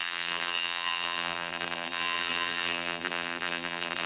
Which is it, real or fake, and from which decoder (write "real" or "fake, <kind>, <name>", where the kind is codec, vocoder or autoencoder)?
fake, vocoder, BigVGAN v2